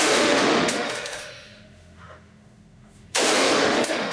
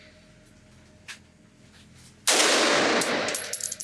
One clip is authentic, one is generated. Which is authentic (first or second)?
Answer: second